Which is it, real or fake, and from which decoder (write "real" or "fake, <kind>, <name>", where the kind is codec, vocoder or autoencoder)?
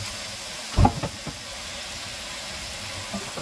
real